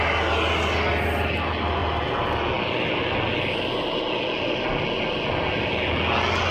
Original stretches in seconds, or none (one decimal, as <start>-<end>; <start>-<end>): 0.0-6.5